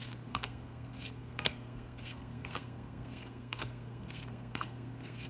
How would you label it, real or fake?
fake